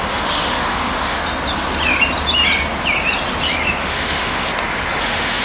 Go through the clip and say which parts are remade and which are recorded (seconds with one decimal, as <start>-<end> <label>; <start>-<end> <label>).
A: 0.0-1.2 remade; 1.2-3.8 recorded; 3.8-4.5 remade; 4.5-5.0 recorded; 5.0-5.4 remade